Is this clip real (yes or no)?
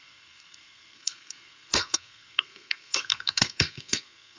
no